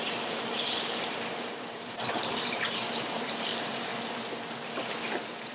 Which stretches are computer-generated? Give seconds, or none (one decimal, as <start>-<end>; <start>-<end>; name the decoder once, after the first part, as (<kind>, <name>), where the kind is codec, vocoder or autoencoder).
0.0-3.9 (vocoder, BigVGAN v2); 5.1-5.5